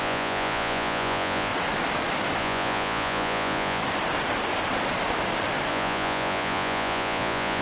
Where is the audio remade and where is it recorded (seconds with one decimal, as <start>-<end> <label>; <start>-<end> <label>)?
0.0-1.5 remade; 1.5-2.4 recorded; 2.4-3.8 remade; 3.8-5.7 recorded; 5.7-7.6 remade